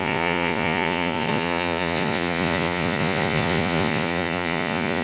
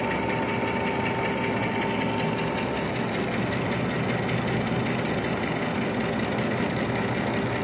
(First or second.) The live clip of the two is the second